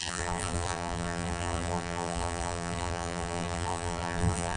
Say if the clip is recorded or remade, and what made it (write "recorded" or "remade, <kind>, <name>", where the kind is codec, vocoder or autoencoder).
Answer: remade, vocoder, BigVGAN v2